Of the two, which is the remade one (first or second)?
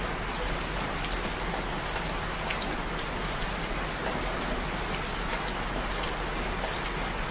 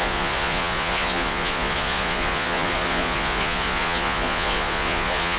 second